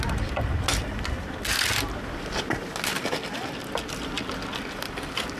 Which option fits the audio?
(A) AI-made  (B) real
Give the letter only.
B